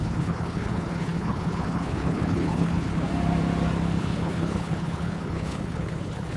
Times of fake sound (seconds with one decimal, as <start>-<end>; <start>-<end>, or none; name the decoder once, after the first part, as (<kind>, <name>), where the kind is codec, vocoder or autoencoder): 0.0-3.1 (codec, HILCodec); 4.0-6.4